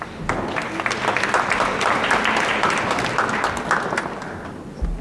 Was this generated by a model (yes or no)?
no